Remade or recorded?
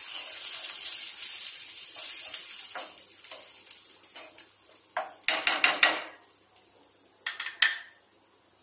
recorded